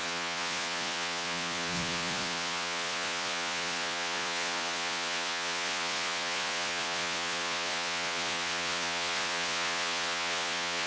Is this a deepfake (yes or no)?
yes